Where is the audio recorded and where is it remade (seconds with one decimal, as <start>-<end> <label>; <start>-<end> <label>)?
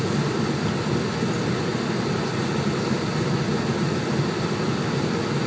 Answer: 0.0-5.5 recorded